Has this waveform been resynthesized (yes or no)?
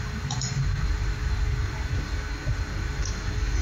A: no